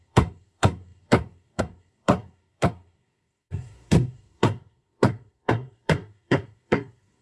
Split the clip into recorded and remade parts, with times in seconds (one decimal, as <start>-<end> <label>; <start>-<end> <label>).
0.0-7.2 remade